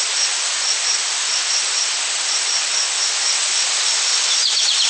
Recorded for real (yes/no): yes